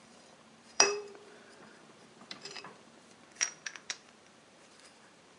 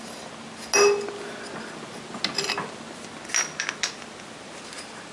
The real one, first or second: second